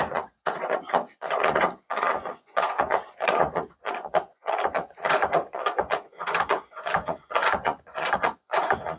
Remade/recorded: remade